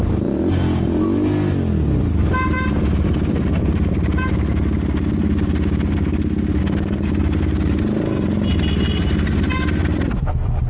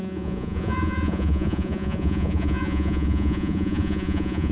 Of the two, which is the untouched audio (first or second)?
first